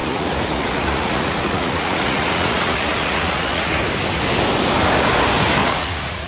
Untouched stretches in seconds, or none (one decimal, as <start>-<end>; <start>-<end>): 3.8-5.6